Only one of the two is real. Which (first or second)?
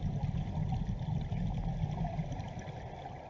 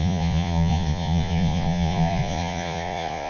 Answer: first